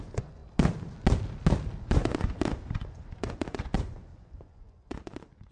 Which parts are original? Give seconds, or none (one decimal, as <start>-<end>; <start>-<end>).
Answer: 0.4-1.8